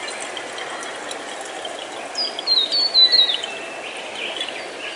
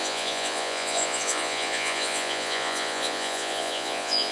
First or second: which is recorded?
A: first